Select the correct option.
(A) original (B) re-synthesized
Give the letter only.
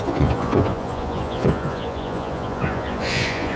B